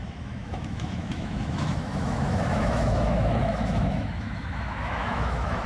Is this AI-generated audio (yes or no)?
yes